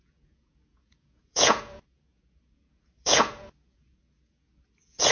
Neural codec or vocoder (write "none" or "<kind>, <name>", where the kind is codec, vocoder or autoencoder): vocoder, Vocos